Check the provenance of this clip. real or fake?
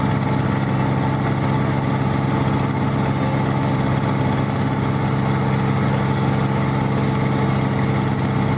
real